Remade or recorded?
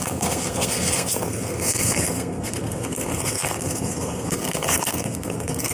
remade